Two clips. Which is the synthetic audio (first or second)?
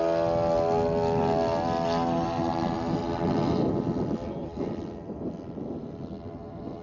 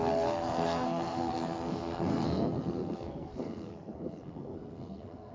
second